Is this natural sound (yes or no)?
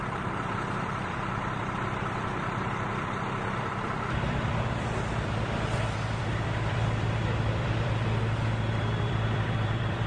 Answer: no